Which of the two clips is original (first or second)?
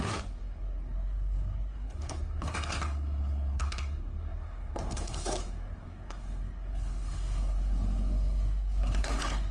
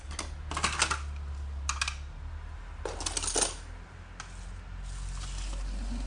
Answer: second